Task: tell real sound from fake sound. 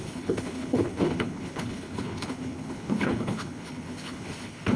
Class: fake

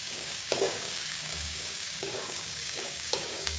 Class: fake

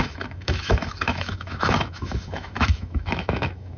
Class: fake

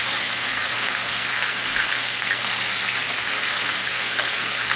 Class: fake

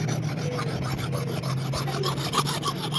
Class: real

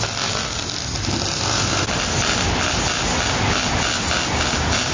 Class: real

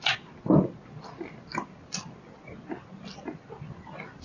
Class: real